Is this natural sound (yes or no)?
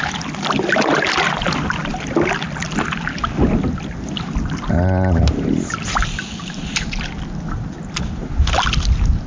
yes